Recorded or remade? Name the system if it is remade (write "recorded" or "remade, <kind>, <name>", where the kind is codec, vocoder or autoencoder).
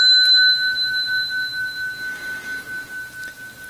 recorded